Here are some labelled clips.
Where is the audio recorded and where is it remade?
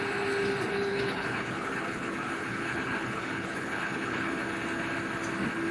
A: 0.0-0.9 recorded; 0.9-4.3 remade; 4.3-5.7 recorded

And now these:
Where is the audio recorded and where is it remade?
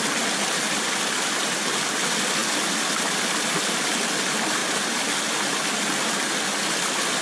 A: 0.0-7.2 recorded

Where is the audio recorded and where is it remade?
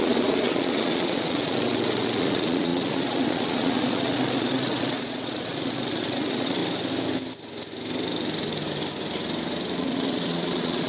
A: 0.0-6.6 remade; 6.6-9.8 recorded; 9.8-10.9 remade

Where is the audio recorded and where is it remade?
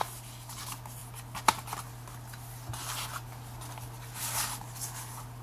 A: 0.0-5.4 recorded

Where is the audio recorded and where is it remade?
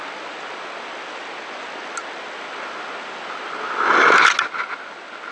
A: 0.0-5.3 recorded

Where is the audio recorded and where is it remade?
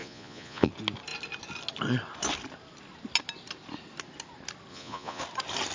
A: 0.0-0.7 remade; 0.7-4.7 recorded; 4.7-5.2 remade; 5.2-5.7 recorded